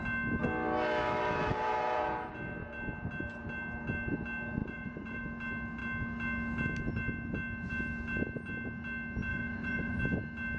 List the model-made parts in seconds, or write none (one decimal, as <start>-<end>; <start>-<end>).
1.5-2.3; 4.6-5.2; 9.3-10.0